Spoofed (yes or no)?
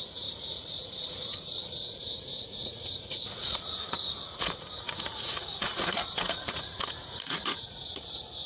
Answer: yes